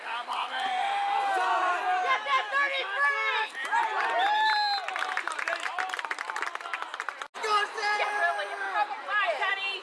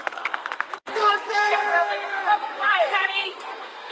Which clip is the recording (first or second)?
first